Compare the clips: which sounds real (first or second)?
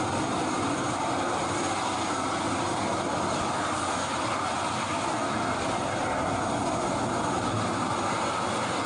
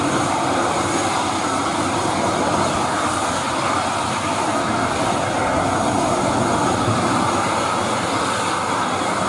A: first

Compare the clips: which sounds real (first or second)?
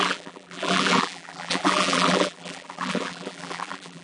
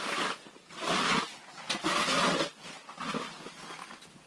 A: second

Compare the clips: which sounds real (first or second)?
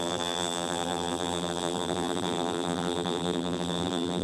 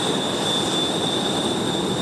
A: second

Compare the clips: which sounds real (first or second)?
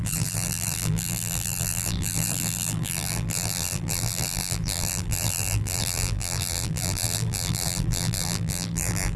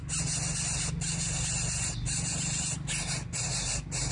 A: second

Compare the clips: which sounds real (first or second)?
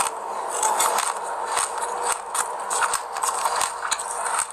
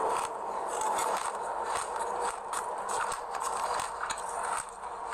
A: first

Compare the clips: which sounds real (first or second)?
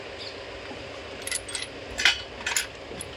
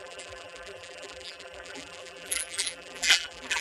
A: first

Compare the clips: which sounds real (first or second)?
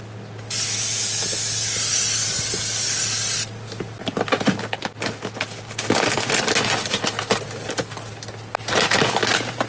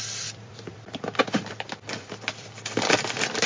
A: first